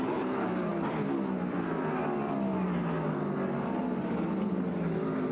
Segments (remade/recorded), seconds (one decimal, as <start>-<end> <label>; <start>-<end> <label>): 0.0-5.3 recorded